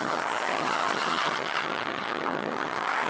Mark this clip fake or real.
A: fake